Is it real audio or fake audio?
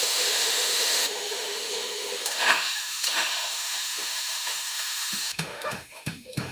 fake